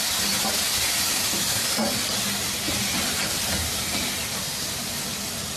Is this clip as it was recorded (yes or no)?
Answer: yes